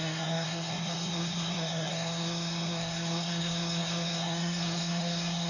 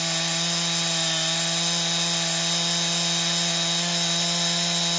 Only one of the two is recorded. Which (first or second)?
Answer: second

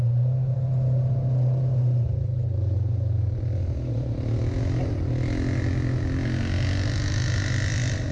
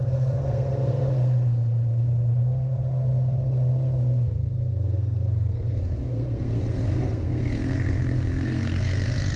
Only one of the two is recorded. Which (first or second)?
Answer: first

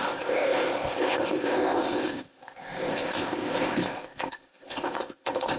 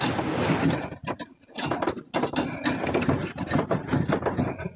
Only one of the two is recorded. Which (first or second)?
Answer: second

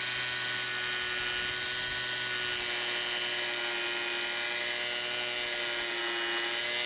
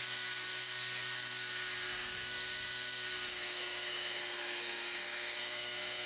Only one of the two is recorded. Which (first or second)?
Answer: first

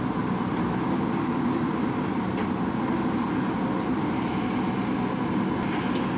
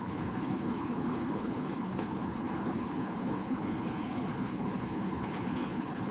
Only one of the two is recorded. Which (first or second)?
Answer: first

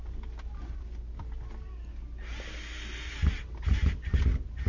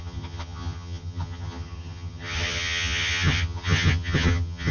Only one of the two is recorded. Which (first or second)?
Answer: first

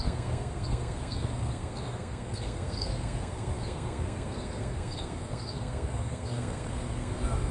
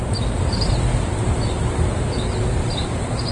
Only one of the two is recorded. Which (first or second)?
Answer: second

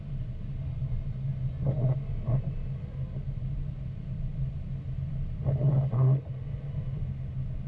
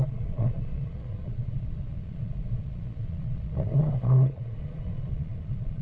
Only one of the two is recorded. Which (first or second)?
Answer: first